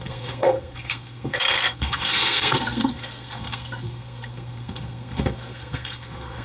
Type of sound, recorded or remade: remade